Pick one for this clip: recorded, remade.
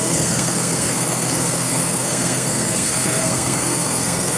remade